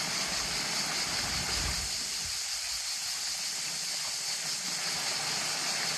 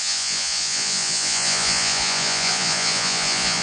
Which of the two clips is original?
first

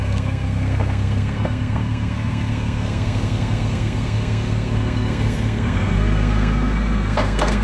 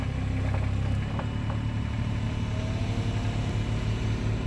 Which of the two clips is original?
second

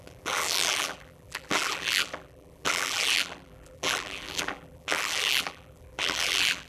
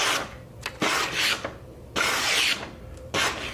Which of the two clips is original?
second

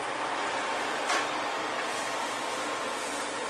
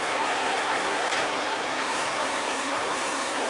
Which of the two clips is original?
first